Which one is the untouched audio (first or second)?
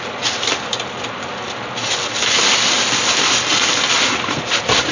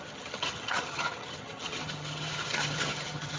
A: first